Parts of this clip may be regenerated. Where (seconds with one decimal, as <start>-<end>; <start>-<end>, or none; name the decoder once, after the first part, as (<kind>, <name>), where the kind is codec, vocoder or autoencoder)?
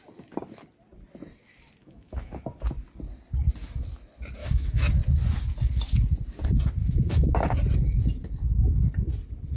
1.8-2.4 (autoencoder, DAC-VAE); 4.4-4.9; 6.8-7.3